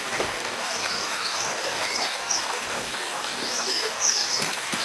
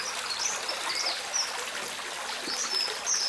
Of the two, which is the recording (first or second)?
second